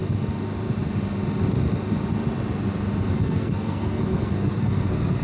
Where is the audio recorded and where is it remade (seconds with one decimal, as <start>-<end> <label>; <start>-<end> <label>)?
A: 0.0-3.1 recorded; 3.1-5.2 remade